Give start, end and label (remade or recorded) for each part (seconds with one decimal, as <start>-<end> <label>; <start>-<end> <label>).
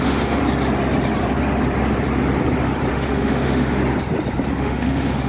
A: 0.0-0.4 remade; 0.4-2.9 recorded; 2.9-3.8 remade; 3.8-4.5 recorded; 4.5-5.3 remade